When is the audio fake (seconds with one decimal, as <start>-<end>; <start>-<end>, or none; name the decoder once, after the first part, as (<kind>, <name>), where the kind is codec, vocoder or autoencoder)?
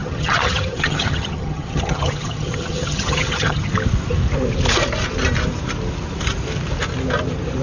0.0-3.7 (vocoder, HiFi-GAN)